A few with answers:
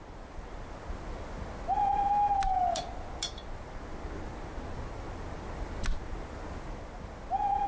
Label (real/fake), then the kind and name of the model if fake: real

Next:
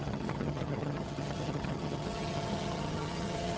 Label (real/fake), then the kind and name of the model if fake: fake, vocoder, HiFi-GAN